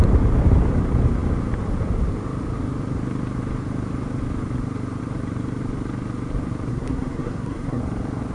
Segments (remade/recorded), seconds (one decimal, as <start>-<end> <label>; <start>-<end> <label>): 0.0-6.7 recorded; 6.7-7.8 remade; 7.8-8.3 recorded